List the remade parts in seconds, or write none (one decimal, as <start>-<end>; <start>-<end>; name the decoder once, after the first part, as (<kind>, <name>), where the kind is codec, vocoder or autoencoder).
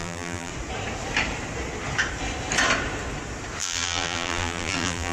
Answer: 0.0-0.5 (vocoder, BigVGAN v2); 3.6-5.1